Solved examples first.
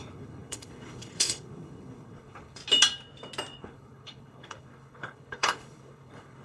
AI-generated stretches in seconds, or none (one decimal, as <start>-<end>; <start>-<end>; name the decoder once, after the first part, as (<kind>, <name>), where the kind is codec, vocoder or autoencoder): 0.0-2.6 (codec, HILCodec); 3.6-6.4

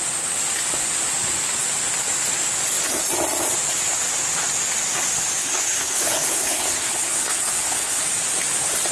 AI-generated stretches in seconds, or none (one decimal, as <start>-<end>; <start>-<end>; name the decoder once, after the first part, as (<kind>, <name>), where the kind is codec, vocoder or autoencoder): 5.4-8.0 (codec, HILCodec)

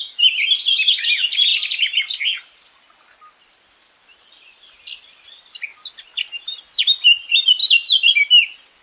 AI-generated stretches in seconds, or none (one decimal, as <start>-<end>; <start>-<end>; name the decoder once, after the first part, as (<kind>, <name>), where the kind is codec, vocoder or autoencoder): none

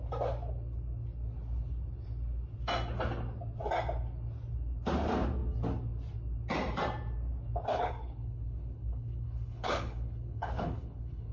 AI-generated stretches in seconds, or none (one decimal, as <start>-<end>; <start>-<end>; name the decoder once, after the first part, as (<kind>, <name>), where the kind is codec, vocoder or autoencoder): 7.7-11.3 (codec, HILCodec)

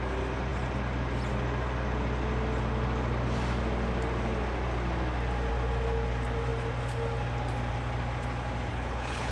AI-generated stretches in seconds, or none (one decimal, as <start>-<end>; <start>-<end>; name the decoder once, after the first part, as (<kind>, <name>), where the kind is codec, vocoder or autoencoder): 8.7-9.3 (codec, HILCodec)

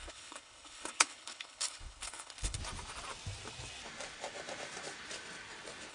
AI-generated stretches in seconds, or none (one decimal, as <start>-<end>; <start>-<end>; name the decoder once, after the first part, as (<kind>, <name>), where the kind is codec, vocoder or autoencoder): 0.0-2.6 (codec, HILCodec)

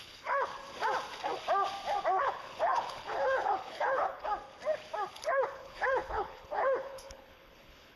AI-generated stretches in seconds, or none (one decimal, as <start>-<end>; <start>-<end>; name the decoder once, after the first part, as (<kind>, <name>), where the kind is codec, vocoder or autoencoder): 0.0-0.5 (codec, HILCodec); 2.2-4.3; 5.1-8.0

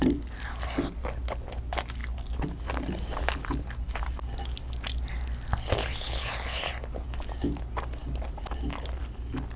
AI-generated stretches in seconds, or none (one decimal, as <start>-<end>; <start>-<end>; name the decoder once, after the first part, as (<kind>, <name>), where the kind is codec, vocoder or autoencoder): 5.8-6.7 (codec, HILCodec)